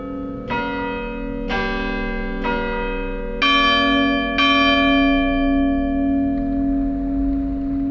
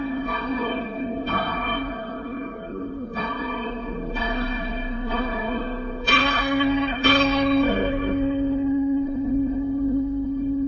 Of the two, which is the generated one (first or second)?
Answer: second